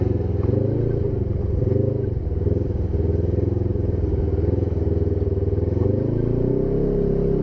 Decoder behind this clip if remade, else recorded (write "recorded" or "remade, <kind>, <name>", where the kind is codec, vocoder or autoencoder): recorded